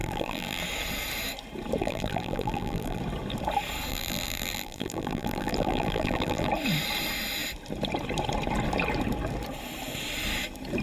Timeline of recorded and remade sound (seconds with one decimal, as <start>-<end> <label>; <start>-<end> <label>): 0.0-0.6 remade; 0.6-1.8 recorded; 1.8-3.0 remade; 3.0-3.9 recorded; 3.9-6.5 remade; 6.5-10.8 recorded